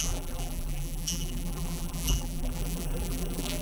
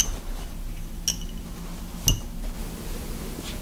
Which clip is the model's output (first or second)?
first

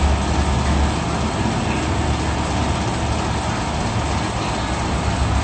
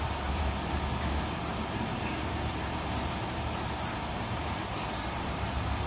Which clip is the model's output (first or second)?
second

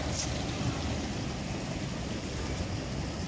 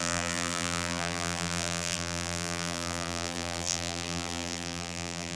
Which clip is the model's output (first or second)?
second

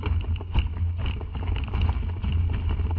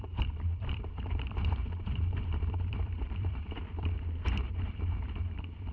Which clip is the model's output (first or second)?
second